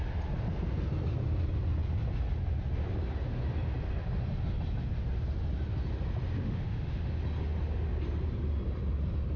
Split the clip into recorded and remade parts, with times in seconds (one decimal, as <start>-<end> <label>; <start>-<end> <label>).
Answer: 0.0-6.4 recorded; 6.4-7.1 remade; 7.1-9.4 recorded

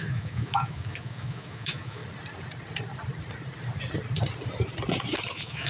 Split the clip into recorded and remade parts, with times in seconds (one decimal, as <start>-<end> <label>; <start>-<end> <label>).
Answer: 0.0-2.0 remade; 2.0-5.3 recorded; 5.3-5.7 remade

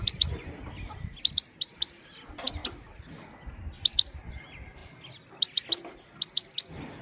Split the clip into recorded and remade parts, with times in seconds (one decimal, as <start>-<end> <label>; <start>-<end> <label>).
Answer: 0.0-7.0 recorded

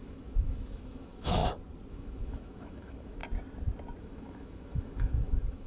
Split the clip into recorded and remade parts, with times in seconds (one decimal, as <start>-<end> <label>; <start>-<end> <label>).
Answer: 0.0-1.4 remade; 1.4-1.9 recorded; 1.9-3.2 remade; 3.2-4.0 recorded; 4.0-5.7 remade